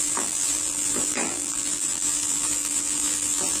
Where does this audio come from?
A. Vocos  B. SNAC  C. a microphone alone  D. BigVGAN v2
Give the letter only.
D